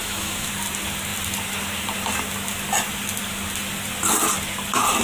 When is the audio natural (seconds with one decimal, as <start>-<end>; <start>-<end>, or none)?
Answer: 0.5-5.0

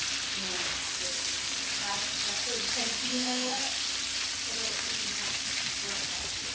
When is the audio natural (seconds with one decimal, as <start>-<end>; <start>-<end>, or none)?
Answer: 0.0-3.1; 3.6-6.5

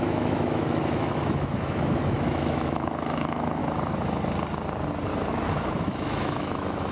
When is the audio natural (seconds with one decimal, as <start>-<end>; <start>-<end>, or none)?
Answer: 3.6-5.3

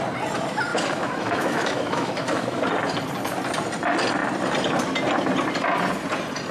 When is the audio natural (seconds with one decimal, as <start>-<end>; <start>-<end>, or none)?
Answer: 0.0-0.7; 2.6-6.5

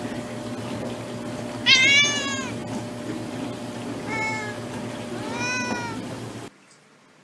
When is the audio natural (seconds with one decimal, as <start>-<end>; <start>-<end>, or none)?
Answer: 0.0-7.2